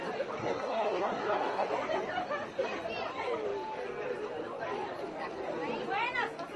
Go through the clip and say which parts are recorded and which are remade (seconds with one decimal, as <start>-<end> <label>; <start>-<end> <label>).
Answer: 0.0-0.4 recorded; 0.4-1.7 remade; 1.7-6.6 recorded